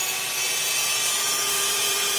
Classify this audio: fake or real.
fake